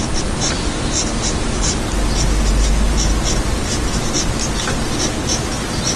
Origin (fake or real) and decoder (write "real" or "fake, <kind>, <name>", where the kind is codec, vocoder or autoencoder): real